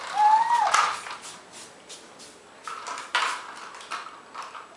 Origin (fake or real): real